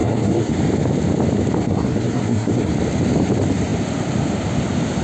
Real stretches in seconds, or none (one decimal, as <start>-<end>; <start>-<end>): 0.5-1.6; 2.7-5.0